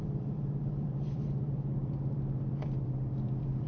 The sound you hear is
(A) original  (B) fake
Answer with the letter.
B